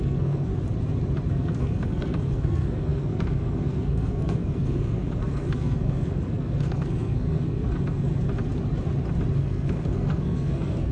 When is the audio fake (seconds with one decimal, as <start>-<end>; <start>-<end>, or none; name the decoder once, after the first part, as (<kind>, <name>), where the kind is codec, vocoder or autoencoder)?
0.0-0.5 (codec, SNAC); 1.3-8.1; 9.4-10.9